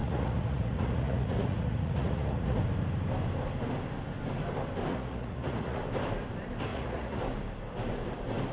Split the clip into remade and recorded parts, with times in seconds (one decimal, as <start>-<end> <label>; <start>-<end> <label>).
0.0-2.6 remade; 2.6-4.9 recorded; 4.9-5.8 remade; 5.8-6.7 recorded; 6.7-7.2 remade; 7.2-8.5 recorded

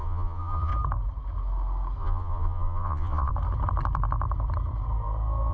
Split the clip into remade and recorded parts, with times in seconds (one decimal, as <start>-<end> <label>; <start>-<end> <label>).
0.0-0.7 remade; 0.7-2.0 recorded; 2.0-3.3 remade; 3.3-5.5 recorded

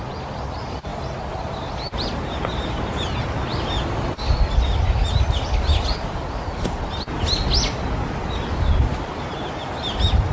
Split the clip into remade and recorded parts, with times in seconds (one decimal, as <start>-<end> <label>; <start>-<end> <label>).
0.0-10.3 recorded